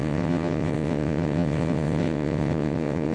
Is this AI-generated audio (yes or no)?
yes